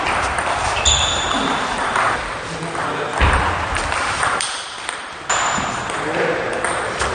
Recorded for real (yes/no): yes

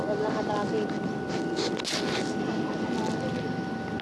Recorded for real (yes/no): yes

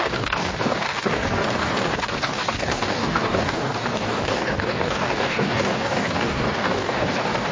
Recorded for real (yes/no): no